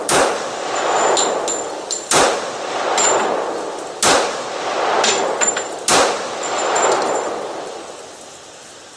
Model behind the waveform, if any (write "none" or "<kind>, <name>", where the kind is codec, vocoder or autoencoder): none